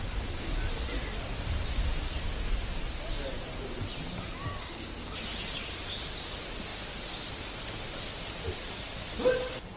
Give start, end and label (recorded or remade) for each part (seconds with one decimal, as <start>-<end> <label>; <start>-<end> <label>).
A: 0.0-4.5 recorded; 4.5-5.1 remade; 5.1-9.8 recorded